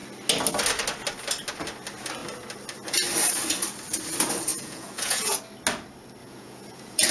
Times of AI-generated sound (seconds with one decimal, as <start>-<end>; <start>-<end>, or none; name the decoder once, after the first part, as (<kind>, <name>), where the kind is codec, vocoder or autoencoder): 4.5-5.4 (vocoder, Vocos); 6.2-7.1